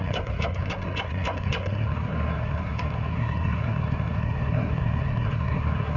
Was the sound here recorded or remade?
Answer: remade